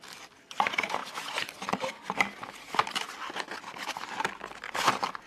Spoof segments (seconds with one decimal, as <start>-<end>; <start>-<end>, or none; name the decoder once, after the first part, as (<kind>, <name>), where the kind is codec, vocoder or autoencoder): none